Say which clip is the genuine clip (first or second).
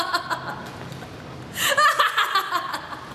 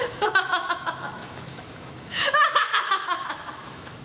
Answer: first